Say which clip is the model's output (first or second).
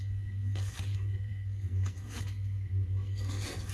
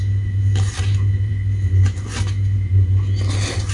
first